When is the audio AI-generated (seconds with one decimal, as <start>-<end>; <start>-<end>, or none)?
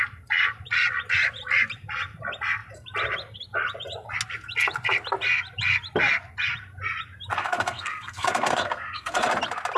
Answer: 7.3-9.3